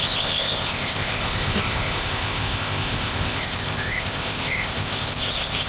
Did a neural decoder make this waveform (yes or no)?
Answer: yes